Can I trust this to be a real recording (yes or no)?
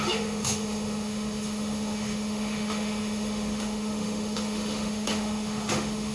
no